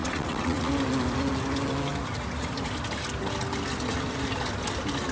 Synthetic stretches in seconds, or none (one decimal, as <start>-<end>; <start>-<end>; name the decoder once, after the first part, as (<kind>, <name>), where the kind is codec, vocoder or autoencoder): 0.0-0.7 (vocoder, WaveNeXt)